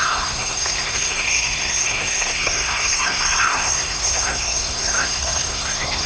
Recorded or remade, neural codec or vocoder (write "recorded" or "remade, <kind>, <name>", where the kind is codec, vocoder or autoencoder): remade, codec, SNAC